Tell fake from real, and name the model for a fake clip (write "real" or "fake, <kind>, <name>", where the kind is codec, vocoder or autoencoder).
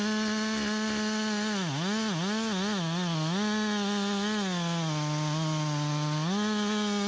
real